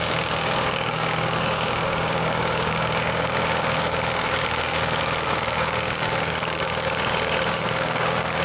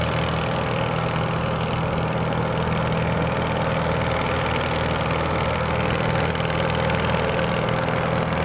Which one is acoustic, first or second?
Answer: second